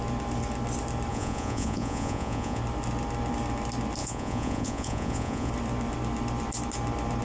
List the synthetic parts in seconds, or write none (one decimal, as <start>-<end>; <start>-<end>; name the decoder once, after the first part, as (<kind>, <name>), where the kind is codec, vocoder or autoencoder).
1.1-2.6 (vocoder, Vocos); 4.0-5.5